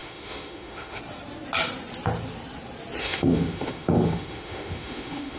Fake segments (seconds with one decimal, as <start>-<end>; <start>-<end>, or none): 0.0-1.0; 3.0-5.4